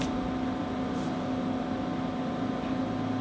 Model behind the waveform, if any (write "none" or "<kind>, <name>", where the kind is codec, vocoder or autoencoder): none